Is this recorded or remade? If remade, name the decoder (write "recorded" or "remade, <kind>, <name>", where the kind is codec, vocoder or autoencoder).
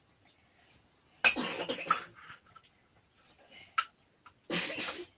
recorded